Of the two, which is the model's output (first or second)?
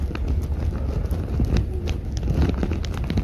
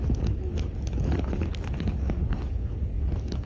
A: second